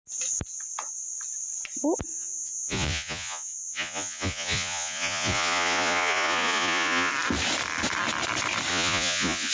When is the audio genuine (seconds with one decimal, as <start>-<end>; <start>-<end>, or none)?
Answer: 0.0-2.1; 7.1-8.7